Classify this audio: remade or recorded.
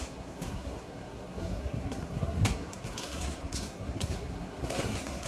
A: remade